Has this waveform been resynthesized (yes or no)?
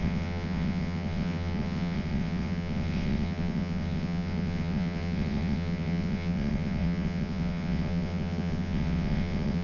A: yes